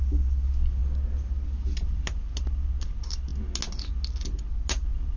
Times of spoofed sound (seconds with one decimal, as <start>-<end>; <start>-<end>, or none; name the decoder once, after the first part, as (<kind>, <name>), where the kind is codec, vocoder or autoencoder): none